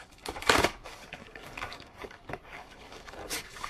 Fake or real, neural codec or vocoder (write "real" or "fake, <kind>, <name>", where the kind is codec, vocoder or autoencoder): fake, codec, DAC